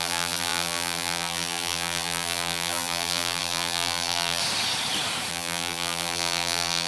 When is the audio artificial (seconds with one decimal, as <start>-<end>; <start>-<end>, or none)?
0.0-4.4; 5.3-6.9